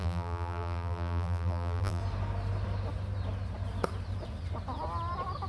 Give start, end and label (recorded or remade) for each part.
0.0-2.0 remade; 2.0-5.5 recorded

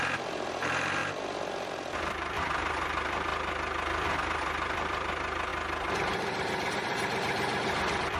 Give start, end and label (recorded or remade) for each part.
0.0-3.3 remade; 3.3-4.2 recorded; 4.2-5.5 remade; 5.5-6.7 recorded; 6.7-8.2 remade

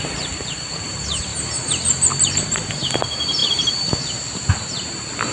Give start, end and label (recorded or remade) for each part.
0.0-3.4 recorded; 3.4-3.9 remade; 3.9-5.3 recorded